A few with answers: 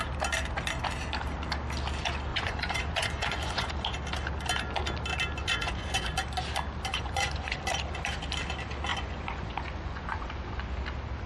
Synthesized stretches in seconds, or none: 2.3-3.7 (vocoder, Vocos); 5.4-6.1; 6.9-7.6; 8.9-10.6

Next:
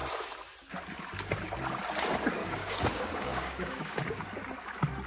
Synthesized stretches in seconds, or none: 2.4-4.2 (codec, DAC)

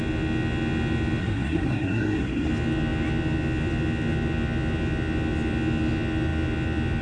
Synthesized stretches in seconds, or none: 1.2-2.5 (codec, SNAC)

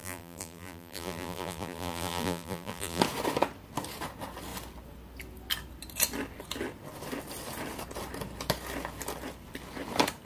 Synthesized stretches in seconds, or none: 0.0-3.0 (vocoder, BigVGAN v2)

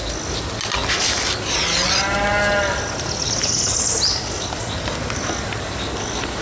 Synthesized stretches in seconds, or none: none